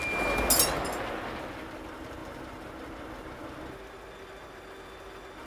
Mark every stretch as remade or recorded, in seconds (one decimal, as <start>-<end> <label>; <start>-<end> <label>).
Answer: 0.0-5.5 recorded